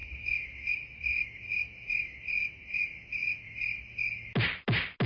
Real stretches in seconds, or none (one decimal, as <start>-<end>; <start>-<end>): 0.0-5.1

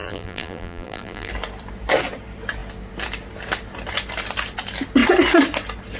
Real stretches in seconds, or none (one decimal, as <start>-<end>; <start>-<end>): 1.3-6.0

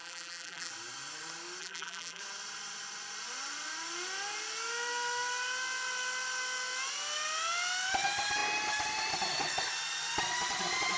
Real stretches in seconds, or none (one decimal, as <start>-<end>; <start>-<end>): 0.7-1.6; 2.2-11.0

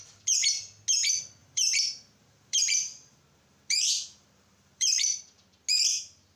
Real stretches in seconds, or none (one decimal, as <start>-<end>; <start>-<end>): 0.0-1.4; 5.2-6.4

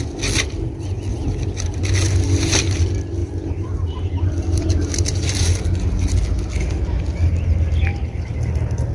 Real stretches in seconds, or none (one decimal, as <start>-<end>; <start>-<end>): 0.0-1.1; 1.8-3.2; 5.0-7.9; 8.4-8.9

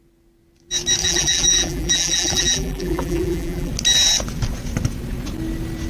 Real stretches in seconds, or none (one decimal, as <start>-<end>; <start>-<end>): 0.0-1.0; 3.7-5.9